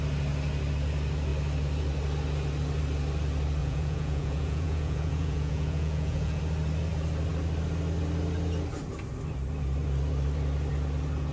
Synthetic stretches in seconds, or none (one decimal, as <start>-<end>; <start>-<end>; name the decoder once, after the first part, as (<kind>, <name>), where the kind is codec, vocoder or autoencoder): 3.6-6.4 (vocoder, Vocos)